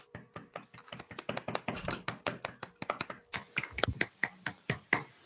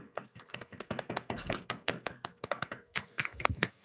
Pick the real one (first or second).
first